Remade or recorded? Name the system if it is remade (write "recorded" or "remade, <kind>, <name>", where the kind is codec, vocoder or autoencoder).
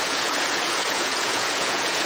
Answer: remade, vocoder, Vocos